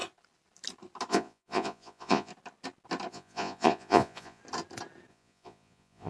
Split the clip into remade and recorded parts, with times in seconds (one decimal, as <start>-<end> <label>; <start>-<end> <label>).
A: 0.0-1.1 recorded; 1.1-2.3 remade; 2.3-3.1 recorded; 3.1-4.4 remade; 4.4-5.1 recorded; 5.1-6.1 remade